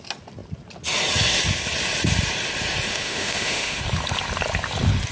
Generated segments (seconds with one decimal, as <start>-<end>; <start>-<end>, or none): 2.9-3.8